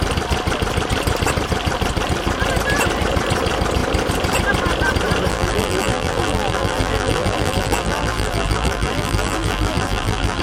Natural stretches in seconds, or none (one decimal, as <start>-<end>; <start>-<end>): 0.0-5.3